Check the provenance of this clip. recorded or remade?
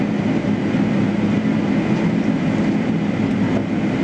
recorded